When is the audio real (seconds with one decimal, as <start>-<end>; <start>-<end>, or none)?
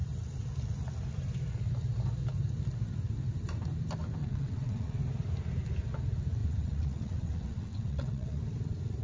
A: 0.0-4.2; 5.0-6.4; 8.4-9.0